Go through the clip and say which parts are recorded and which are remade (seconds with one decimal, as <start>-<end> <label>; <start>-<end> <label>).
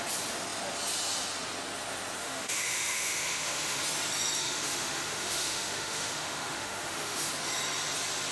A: 0.0-2.2 recorded; 2.2-3.8 remade; 3.8-4.4 recorded; 4.4-7.3 remade; 7.3-8.3 recorded